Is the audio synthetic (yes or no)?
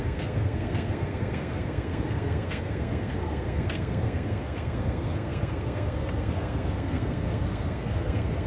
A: yes